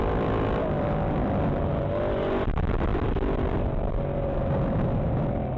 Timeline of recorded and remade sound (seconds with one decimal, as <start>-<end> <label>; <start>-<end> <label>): 0.0-5.6 recorded

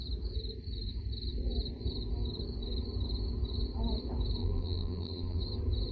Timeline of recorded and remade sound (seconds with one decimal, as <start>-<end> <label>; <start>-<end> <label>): 0.0-4.4 recorded; 4.4-5.4 remade; 5.4-5.9 recorded

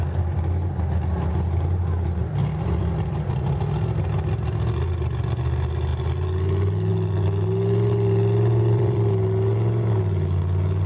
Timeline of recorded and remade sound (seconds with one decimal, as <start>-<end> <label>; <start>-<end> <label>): 0.0-2.4 recorded; 2.4-3.6 remade; 3.6-8.5 recorded; 8.5-9.1 remade; 9.1-10.9 recorded

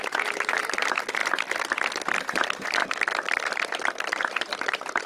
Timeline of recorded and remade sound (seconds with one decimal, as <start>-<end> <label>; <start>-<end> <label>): 0.0-1.2 remade; 1.2-2.2 recorded; 2.2-2.8 remade; 2.8-3.4 recorded; 3.4-5.1 remade

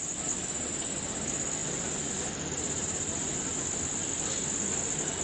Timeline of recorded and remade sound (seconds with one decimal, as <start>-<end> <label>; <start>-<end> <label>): 0.0-0.8 remade; 0.8-5.2 recorded

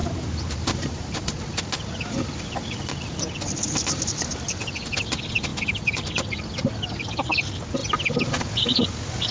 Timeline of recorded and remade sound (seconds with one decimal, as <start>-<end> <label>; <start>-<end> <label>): 0.0-1.4 remade; 1.4-5.5 recorded; 5.5-6.7 remade; 6.7-9.3 recorded